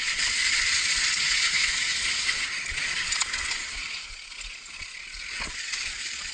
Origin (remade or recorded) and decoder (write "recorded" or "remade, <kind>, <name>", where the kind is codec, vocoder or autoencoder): remade, vocoder, Vocos